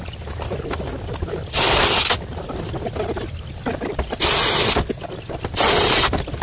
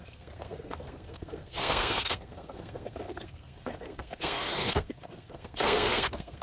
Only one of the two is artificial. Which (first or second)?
second